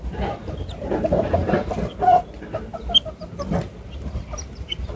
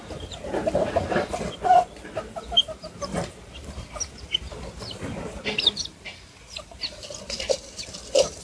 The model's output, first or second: second